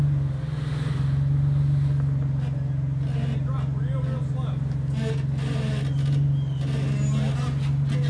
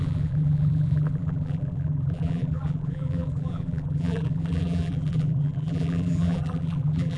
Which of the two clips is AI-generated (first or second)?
second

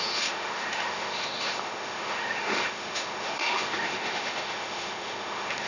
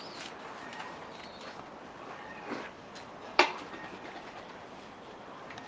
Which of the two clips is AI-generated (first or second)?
first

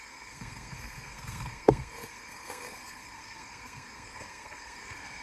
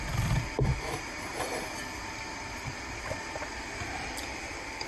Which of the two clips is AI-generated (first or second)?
first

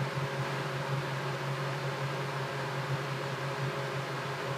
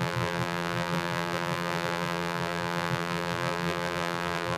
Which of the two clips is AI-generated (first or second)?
second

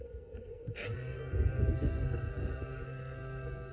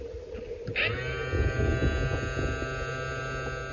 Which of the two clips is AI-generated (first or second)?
first